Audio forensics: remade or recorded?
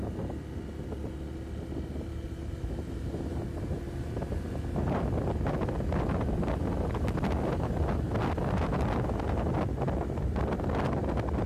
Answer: recorded